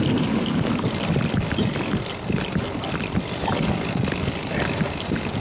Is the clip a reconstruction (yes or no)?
no